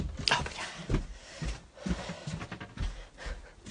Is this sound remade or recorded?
recorded